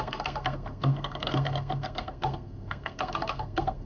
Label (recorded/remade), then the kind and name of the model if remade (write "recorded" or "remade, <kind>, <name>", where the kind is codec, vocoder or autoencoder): remade, codec, SNAC